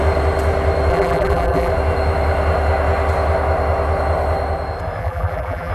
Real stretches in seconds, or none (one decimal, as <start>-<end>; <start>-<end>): 0.0-0.9; 1.7-5.0